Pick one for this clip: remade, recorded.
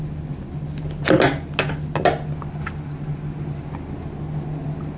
recorded